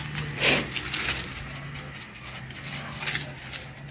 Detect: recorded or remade recorded